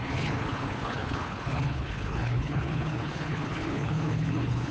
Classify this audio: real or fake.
fake